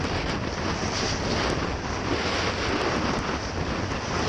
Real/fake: real